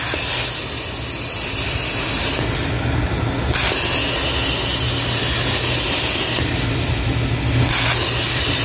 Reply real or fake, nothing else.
real